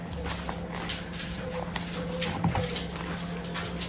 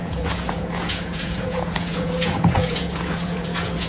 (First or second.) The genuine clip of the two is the first